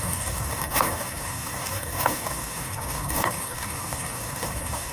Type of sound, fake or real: fake